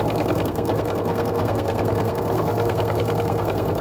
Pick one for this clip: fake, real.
fake